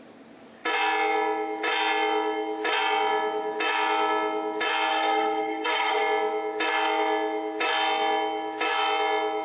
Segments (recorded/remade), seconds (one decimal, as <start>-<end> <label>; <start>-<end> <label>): 0.0-4.9 recorded; 4.9-6.0 remade; 6.0-9.4 recorded